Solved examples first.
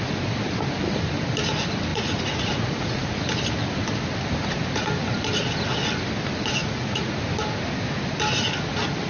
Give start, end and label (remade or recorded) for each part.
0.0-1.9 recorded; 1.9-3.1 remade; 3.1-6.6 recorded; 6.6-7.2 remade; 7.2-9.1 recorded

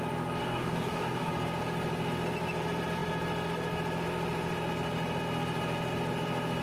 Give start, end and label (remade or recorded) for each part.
0.0-0.4 recorded; 0.4-1.3 remade; 1.3-6.6 recorded

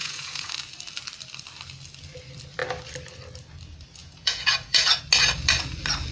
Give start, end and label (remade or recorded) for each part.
0.0-0.5 remade; 0.5-4.0 recorded; 4.0-5.0 remade; 5.0-6.1 recorded

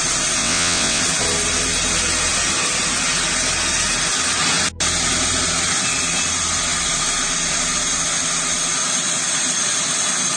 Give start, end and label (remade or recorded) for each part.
0.0-0.4 recorded; 0.4-1.0 remade; 1.0-10.4 recorded

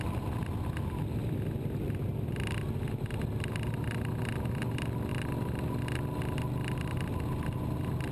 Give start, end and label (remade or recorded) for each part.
0.0-8.1 recorded